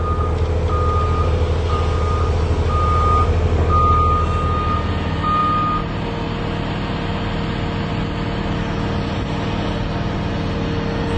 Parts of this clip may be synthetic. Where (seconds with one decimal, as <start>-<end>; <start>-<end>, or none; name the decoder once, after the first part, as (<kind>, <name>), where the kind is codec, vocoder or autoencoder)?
none